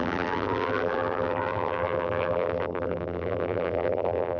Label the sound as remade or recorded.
remade